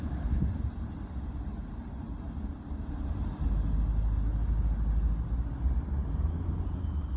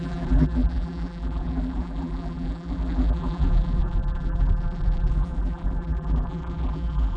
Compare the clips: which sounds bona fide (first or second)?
first